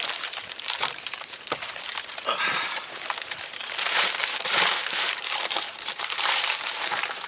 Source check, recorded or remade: remade